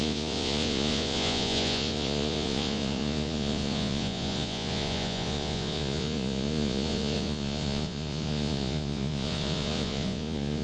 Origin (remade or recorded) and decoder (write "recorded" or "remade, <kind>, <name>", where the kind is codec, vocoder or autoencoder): remade, vocoder, Vocos